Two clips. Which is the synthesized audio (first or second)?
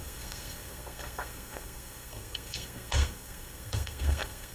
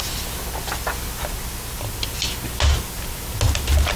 first